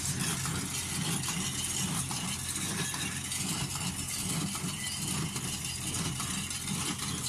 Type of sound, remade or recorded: recorded